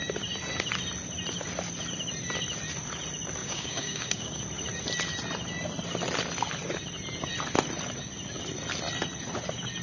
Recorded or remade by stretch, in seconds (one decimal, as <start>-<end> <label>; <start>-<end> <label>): 0.0-3.4 recorded; 3.4-4.4 remade; 4.4-9.8 recorded